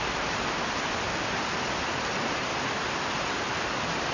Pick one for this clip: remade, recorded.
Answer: recorded